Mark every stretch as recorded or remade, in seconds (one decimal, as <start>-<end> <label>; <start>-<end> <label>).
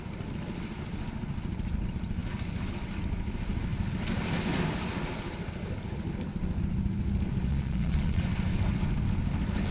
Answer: 0.0-7.5 recorded; 7.5-8.2 remade; 8.2-9.7 recorded